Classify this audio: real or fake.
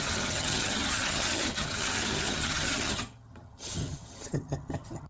fake